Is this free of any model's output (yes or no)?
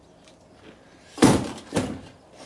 yes